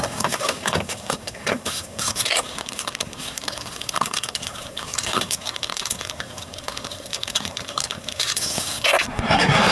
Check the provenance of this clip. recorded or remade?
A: remade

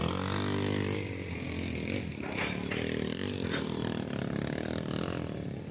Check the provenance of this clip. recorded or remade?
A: recorded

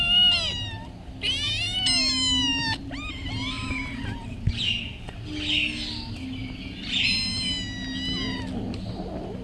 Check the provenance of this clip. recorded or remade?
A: recorded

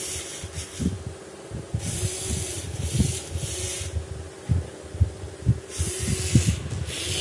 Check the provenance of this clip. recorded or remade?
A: recorded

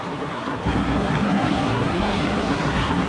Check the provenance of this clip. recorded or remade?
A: remade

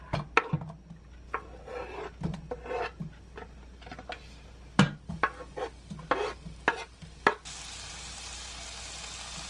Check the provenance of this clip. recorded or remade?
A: recorded